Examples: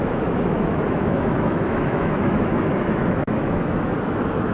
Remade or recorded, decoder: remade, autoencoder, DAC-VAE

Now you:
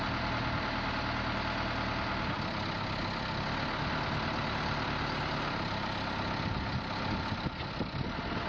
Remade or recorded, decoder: recorded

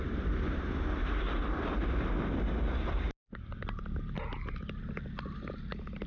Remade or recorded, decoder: recorded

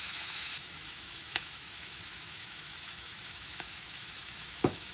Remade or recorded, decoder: remade, autoencoder, DAC-VAE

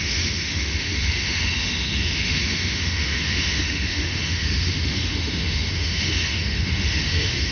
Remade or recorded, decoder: remade, autoencoder, DAC-VAE